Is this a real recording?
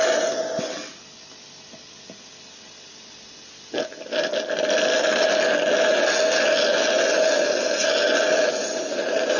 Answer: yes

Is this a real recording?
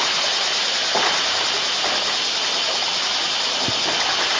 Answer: yes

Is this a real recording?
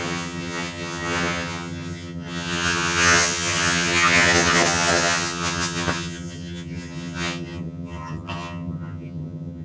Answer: no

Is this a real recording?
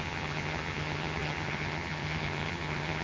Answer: no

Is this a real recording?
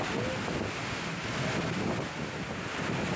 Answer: yes